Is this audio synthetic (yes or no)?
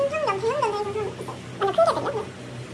no